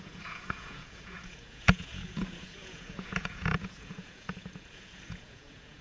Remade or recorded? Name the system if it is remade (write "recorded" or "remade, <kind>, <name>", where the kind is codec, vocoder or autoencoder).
remade, vocoder, Vocos